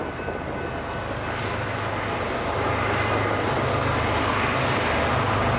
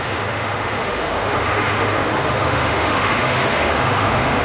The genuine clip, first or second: first